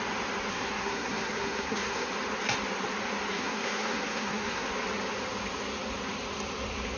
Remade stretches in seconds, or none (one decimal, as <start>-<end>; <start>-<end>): 0.5-2.1; 3.3-4.7